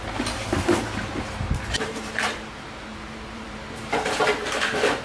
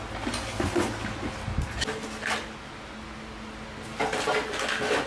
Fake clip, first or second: first